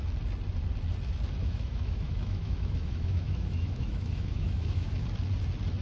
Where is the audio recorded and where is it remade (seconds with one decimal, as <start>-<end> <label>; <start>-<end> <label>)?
0.0-1.4 recorded; 1.4-4.9 remade; 4.9-5.8 recorded